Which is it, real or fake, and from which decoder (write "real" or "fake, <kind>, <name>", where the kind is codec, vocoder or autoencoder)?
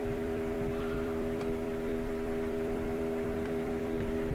fake, vocoder, BigVGAN v2